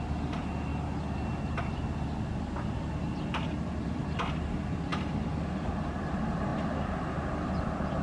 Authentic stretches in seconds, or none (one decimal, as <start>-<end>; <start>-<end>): 0.7-3.7; 6.5-7.1